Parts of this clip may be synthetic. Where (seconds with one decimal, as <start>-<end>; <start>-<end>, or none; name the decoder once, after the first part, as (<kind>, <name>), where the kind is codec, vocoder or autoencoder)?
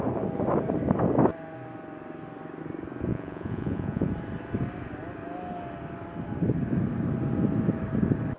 3.1-4.1 (vocoder, Vocos)